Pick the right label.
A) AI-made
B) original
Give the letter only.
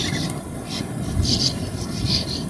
B